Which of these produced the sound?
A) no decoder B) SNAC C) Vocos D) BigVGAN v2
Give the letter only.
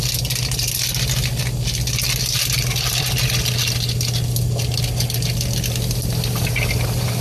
A